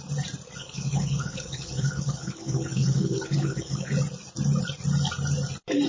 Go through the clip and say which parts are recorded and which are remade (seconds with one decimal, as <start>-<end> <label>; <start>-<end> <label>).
0.0-0.6 recorded; 0.6-3.9 remade; 3.9-5.9 recorded